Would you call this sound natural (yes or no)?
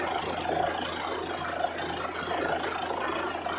yes